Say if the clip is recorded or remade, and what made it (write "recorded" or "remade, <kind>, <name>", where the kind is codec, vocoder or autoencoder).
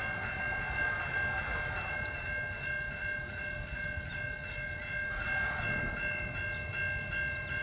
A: recorded